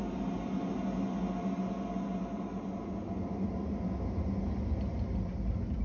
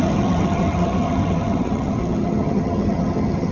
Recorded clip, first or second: first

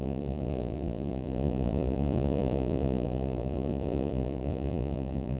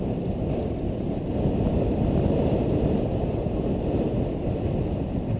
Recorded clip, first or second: second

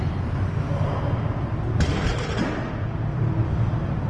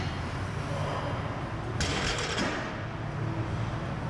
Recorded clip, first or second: second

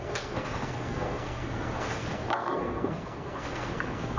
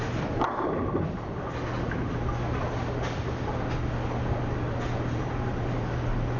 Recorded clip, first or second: second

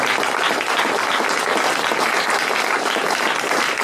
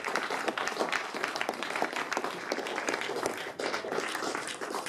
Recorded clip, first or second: first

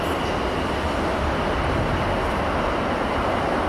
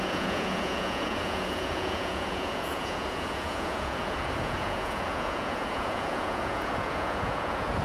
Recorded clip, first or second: first